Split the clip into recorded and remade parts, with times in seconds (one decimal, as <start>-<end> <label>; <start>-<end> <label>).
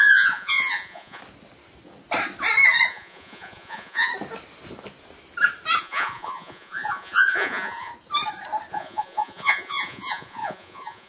0.0-1.2 remade; 1.2-2.9 recorded; 2.9-4.1 remade; 4.1-5.8 recorded; 5.8-7.9 remade; 7.9-8.7 recorded; 8.7-11.1 remade